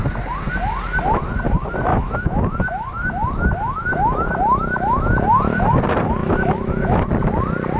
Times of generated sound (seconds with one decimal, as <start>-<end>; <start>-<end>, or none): 1.9-5.6; 6.2-7.1